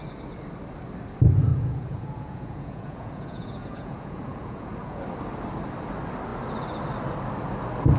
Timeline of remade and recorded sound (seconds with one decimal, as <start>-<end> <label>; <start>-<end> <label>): 0.0-1.5 recorded; 1.5-5.0 remade; 5.0-8.0 recorded